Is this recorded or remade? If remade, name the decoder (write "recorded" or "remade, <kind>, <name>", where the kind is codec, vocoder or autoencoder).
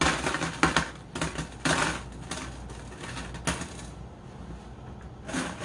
recorded